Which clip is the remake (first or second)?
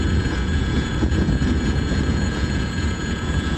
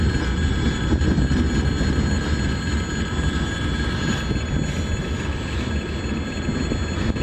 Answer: first